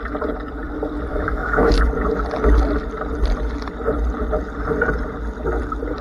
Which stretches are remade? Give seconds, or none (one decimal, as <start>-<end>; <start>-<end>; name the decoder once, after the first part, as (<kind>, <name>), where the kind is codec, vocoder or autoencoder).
1.1-1.7 (autoencoder, DAC-VAE)